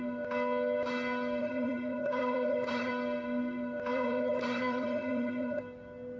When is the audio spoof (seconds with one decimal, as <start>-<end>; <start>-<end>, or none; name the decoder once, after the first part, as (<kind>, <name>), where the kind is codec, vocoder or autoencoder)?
1.4-2.9 (vocoder, HiFi-GAN); 3.9-5.6